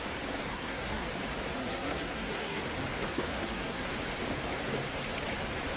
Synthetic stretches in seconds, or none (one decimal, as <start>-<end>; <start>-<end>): 0.5-1.1; 1.6-2.6; 3.0-3.9